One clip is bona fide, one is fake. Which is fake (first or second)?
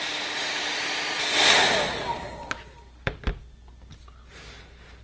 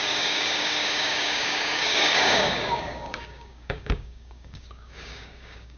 second